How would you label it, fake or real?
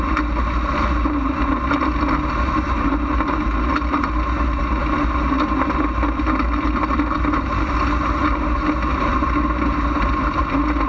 real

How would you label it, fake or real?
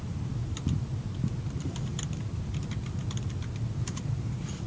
real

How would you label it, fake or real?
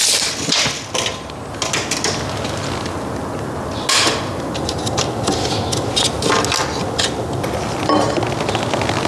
real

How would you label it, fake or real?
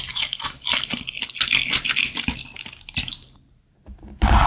real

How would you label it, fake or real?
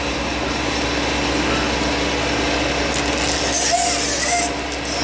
real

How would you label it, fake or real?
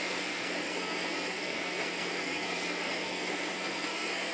fake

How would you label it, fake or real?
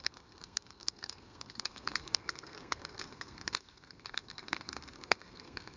fake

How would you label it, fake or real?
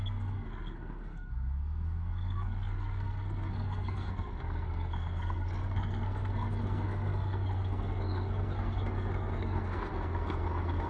fake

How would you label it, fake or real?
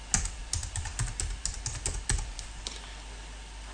real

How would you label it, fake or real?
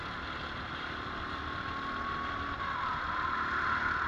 real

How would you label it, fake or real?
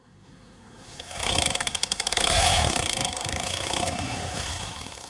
fake